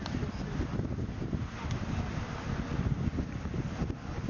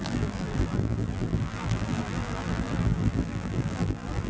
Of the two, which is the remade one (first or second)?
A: second